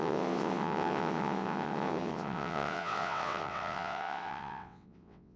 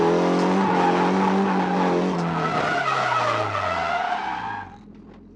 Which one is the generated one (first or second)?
first